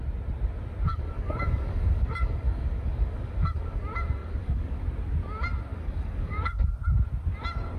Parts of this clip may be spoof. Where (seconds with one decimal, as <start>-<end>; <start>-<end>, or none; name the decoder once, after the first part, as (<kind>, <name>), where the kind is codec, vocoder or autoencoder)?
0.9-3.8 (codec, DAC); 4.2-4.8; 5.7-6.7